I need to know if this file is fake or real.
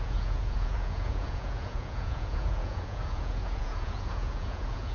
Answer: fake